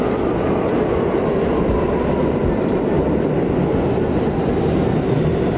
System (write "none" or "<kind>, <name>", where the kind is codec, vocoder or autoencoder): none